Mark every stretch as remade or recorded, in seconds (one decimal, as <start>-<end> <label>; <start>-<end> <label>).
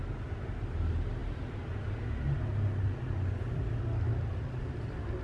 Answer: 0.0-5.2 recorded